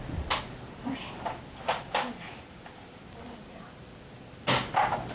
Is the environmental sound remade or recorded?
recorded